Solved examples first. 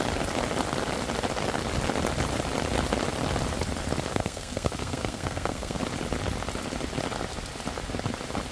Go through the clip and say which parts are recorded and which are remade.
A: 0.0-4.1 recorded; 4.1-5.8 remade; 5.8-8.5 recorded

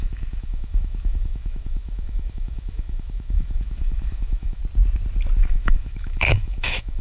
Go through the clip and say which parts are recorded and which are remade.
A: 0.0-4.6 remade; 4.6-5.4 recorded; 5.4-7.0 remade

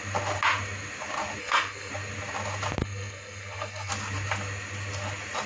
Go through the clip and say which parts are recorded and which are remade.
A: 0.0-1.4 recorded; 1.4-1.9 remade; 1.9-2.8 recorded; 2.8-3.9 remade; 3.9-5.5 recorded

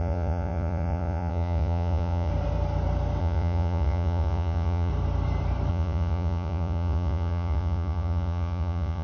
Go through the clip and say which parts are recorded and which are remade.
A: 0.0-2.3 remade; 2.3-3.2 recorded; 3.2-4.9 remade; 4.9-5.7 recorded; 5.7-9.0 remade